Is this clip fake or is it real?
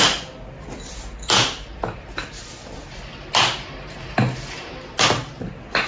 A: real